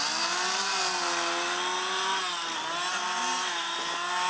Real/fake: real